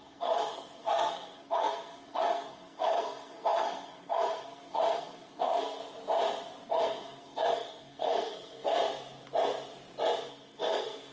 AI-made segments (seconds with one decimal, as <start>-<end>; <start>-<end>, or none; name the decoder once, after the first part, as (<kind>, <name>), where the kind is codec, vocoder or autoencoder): 0.0-5.8 (codec, SNAC); 6.7-8.8; 10.3-11.1